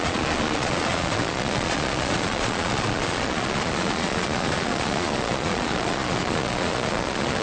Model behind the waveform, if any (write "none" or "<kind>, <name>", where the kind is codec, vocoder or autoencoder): vocoder, Vocos